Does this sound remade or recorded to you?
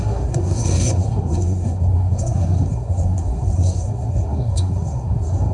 remade